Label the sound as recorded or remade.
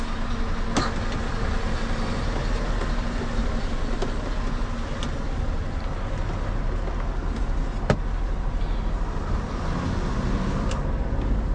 recorded